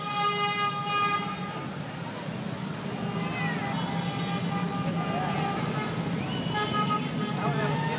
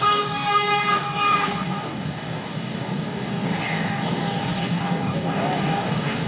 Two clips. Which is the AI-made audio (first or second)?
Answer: second